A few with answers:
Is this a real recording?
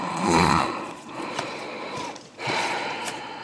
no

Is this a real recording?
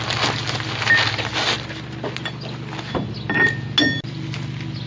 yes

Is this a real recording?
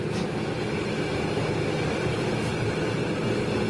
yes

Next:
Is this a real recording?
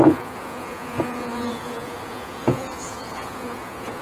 no